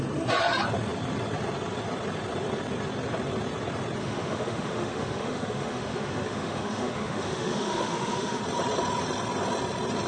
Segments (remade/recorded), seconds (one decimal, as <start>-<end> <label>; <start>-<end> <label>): 0.0-4.0 recorded; 4.0-8.4 remade; 8.4-10.1 recorded

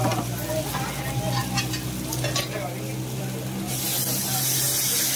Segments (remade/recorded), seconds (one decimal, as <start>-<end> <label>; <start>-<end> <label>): 0.0-5.2 recorded